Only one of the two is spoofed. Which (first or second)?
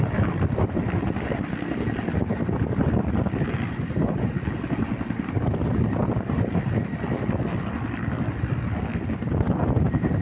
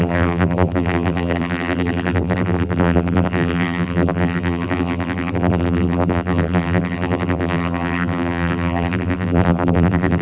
second